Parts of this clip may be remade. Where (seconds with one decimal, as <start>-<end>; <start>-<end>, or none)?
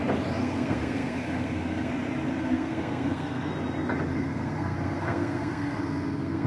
0.4-1.9; 2.3-3.5; 4.1-6.5